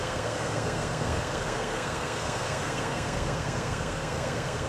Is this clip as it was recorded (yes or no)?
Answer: no